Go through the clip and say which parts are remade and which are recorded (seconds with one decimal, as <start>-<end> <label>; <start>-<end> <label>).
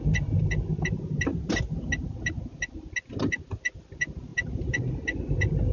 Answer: 0.0-5.7 recorded